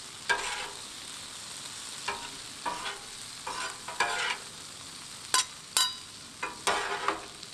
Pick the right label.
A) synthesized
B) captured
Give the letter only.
B